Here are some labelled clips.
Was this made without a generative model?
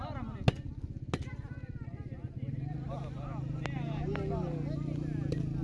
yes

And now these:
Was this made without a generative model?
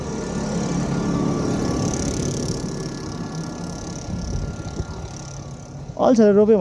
yes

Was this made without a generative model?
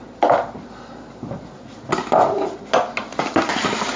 yes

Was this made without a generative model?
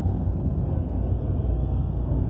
no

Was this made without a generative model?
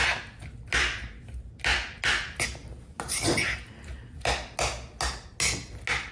yes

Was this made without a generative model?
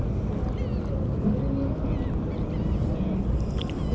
yes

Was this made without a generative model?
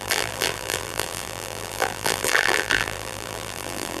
no